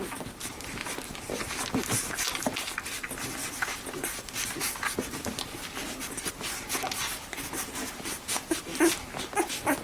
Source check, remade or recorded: recorded